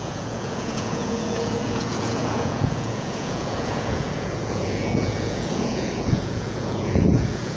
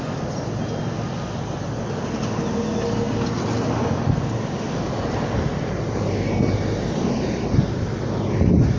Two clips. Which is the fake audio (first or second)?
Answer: first